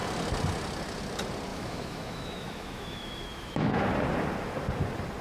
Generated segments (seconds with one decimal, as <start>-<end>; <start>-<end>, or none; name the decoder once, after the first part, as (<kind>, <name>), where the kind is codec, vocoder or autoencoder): 1.5-3.9 (autoencoder, DAC-VAE)